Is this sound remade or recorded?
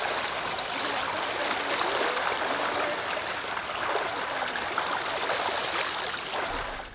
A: recorded